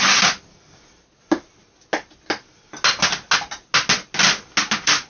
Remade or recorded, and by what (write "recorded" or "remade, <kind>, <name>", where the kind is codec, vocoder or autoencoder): recorded